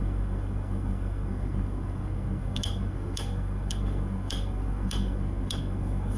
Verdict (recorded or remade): remade